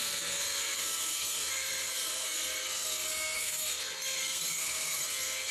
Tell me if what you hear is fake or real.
fake